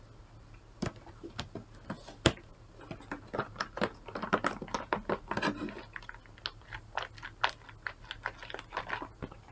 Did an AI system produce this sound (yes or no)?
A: no